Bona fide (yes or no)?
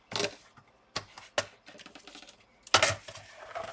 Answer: yes